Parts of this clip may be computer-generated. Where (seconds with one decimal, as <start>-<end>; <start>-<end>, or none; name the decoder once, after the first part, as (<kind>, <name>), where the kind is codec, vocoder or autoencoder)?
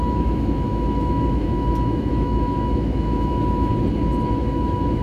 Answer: 0.0-3.7 (autoencoder, DAC-VAE); 4.3-5.0